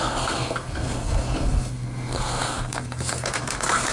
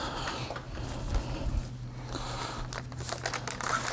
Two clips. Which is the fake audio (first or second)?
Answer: first